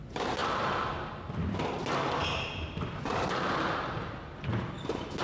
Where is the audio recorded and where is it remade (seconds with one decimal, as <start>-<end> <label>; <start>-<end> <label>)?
0.0-5.2 recorded